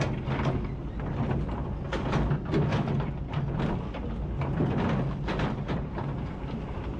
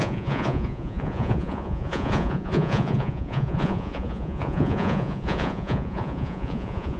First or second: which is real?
first